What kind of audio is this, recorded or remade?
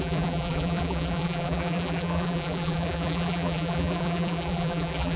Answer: remade